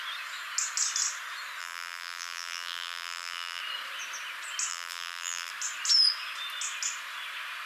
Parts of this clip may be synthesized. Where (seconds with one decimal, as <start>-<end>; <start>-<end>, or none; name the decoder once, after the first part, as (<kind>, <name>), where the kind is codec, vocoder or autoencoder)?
1.6-3.6 (vocoder, BigVGAN v2); 4.7-5.5